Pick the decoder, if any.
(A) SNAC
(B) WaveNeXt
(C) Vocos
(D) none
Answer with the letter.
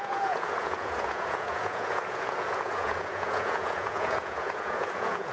C